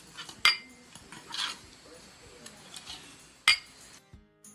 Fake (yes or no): no